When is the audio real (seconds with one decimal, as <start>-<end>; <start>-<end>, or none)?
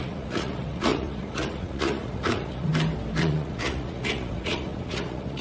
2.7-3.2